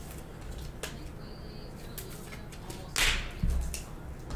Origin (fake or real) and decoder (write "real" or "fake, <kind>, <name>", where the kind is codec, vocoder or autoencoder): real